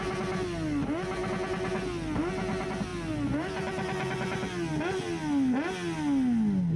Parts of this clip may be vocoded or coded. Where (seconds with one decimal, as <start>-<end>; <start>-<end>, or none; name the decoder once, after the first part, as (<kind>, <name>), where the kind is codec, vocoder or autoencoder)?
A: none